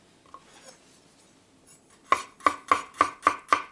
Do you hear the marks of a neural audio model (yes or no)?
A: no